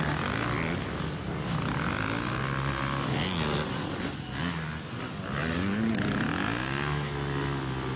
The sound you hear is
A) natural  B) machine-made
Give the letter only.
A